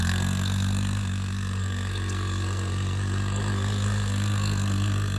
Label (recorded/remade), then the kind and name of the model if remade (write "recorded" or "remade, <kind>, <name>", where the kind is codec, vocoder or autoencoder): remade, codec, SNAC